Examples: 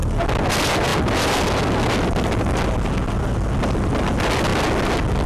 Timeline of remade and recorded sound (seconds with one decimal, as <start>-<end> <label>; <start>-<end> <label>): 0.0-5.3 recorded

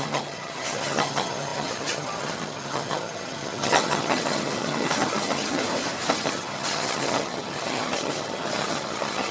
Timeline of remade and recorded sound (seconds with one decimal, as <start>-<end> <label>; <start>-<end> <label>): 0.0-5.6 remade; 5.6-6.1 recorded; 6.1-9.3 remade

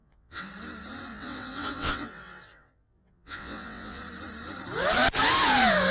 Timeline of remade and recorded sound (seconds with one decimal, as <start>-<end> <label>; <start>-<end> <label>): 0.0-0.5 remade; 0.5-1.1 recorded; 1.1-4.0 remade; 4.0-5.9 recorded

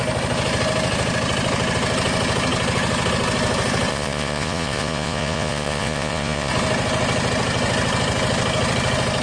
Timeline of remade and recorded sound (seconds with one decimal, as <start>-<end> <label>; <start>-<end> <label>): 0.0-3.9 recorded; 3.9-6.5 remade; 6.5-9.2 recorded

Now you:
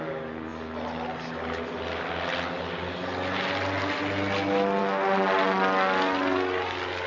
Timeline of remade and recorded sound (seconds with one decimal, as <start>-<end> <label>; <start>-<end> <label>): 0.0-7.1 recorded

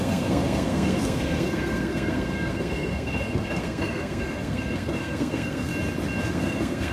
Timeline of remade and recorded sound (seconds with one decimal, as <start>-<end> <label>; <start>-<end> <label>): 0.0-5.7 remade; 5.7-6.3 recorded; 6.3-6.9 remade

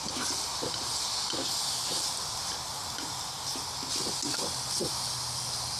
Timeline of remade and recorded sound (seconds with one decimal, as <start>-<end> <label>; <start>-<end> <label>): 0.0-5.8 recorded